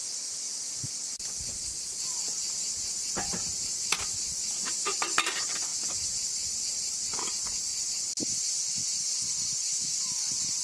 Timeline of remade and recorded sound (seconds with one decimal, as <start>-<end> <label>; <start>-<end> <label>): 0.0-10.6 recorded